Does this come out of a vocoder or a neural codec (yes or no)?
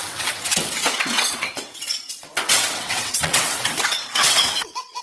yes